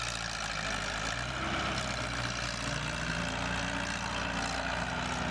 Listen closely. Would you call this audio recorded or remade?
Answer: recorded